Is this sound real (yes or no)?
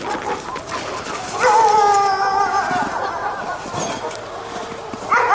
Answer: yes